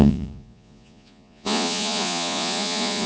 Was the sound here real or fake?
fake